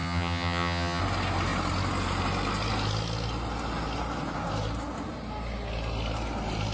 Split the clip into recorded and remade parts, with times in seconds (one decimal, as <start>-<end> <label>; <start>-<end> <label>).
0.0-1.0 remade; 1.0-6.7 recorded